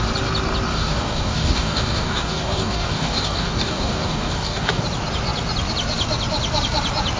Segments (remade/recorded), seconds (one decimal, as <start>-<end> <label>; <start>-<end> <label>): 0.0-0.7 recorded; 0.7-4.8 remade; 4.8-7.2 recorded